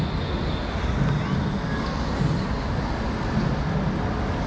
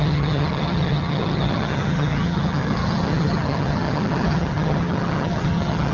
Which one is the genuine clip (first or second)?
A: first